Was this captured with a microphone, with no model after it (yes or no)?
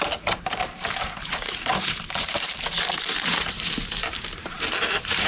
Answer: no